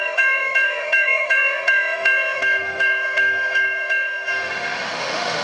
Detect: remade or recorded remade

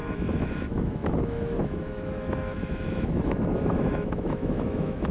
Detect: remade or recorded remade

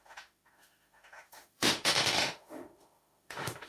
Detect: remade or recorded remade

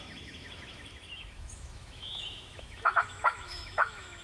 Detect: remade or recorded remade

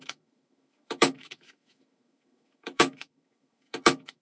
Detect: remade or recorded remade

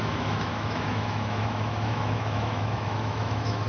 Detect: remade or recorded remade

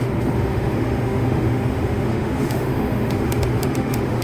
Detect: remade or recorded remade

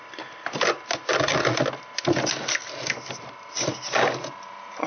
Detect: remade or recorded recorded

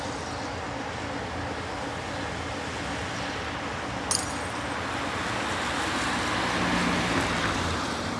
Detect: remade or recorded recorded